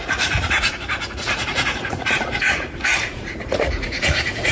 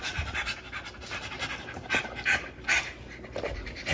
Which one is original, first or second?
second